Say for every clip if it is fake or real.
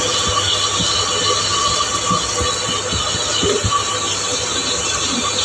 real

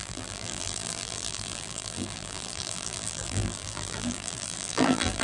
fake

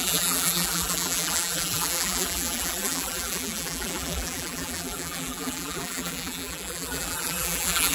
fake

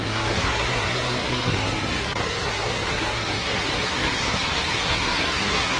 fake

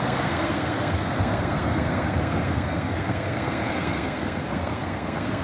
fake